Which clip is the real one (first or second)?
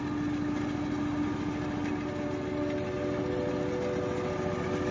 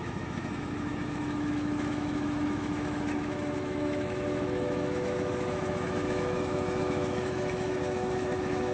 first